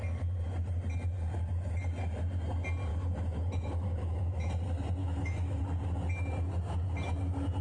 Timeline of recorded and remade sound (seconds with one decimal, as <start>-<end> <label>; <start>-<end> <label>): 0.0-2.9 recorded; 2.9-4.5 remade; 4.5-5.0 recorded; 5.0-5.6 remade; 5.6-7.6 recorded